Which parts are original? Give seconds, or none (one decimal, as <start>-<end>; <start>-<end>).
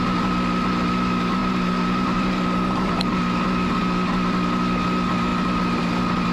0.0-1.4; 3.2-6.3